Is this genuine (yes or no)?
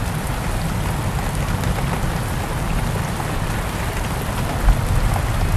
yes